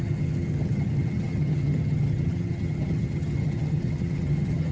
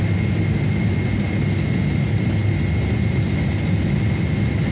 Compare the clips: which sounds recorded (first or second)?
second